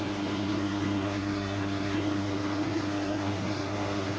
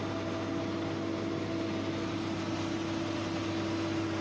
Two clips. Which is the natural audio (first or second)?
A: second